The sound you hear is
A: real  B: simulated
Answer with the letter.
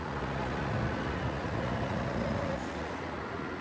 B